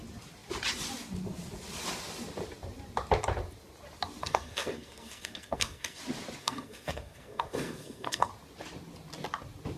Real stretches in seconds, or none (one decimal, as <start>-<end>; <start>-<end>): 0.0-4.2; 6.0-6.4; 8.3-9.8

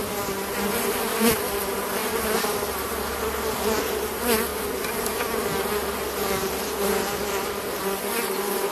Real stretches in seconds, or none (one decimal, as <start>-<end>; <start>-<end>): 2.0-2.9; 4.5-7.1

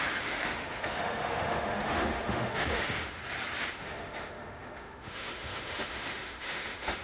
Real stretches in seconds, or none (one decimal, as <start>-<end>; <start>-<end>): 3.2-3.7

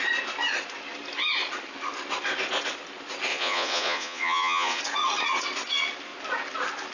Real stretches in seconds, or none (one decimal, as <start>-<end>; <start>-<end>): 0.0-3.3; 4.8-6.9

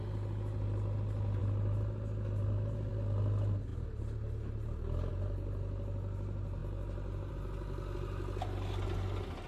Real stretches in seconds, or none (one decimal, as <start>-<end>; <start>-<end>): 0.0-9.5

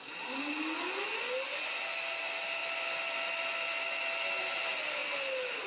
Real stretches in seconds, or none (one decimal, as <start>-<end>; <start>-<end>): 0.0-5.7

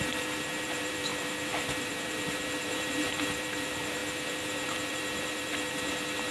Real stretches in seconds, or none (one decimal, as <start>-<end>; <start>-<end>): none

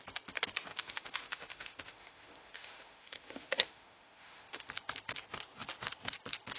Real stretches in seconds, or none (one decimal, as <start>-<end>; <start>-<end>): 0.0-0.7; 4.7-6.6